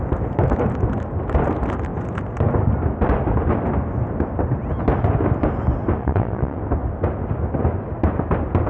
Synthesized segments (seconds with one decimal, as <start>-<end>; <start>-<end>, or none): 6.0-6.6